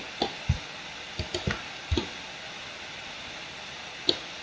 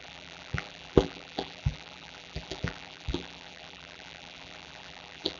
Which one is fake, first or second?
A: second